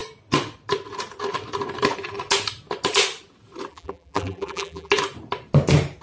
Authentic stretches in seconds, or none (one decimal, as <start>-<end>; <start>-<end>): 0.0-3.7; 4.9-6.0